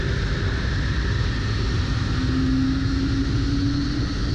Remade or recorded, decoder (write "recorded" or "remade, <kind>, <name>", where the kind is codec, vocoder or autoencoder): recorded